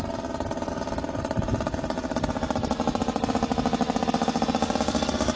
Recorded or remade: recorded